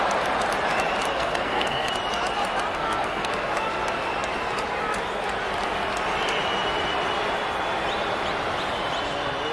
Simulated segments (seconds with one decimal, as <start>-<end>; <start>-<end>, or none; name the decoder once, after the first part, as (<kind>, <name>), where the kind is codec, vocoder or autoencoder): 1.1-1.9 (codec, SNAC); 2.7-3.7